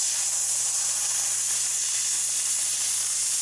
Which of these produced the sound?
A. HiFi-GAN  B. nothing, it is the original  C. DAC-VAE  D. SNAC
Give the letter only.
B